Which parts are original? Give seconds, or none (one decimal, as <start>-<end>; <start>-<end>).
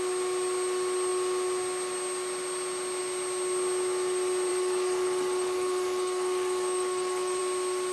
0.0-4.5; 7.4-7.9